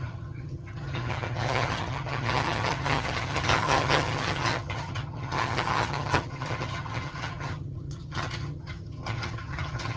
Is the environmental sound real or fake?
fake